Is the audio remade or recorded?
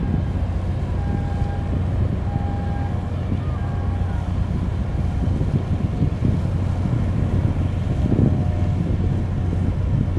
recorded